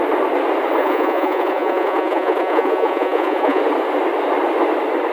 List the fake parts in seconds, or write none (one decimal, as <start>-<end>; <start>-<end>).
0.8-3.6